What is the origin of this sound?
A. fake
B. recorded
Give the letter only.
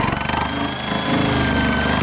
B